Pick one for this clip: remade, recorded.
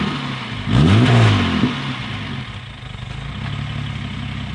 recorded